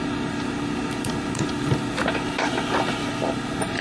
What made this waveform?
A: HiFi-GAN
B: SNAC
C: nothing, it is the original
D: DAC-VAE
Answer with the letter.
C